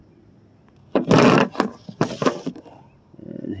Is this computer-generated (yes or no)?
no